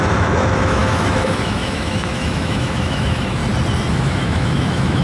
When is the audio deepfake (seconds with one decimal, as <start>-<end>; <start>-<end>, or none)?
0.0-3.4; 3.9-5.0